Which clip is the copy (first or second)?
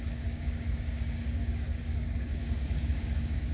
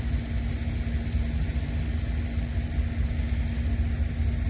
first